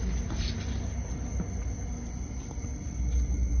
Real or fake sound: real